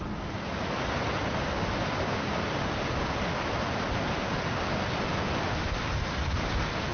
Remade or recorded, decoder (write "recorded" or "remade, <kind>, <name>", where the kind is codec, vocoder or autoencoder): recorded